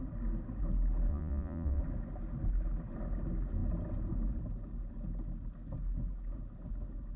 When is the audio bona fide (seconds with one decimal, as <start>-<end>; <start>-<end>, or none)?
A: 0.0-1.1; 1.8-7.2